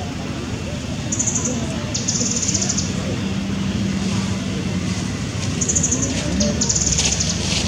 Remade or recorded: recorded